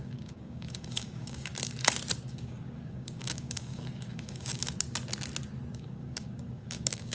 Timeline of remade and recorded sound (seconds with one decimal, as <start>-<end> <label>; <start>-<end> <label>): 0.0-1.5 remade; 1.5-2.3 recorded; 2.3-4.6 remade; 4.6-5.7 recorded; 5.7-7.1 remade